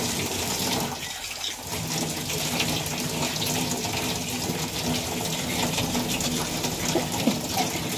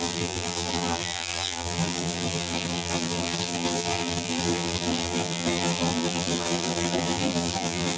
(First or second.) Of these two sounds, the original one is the first